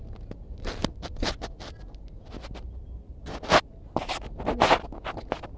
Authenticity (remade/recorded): recorded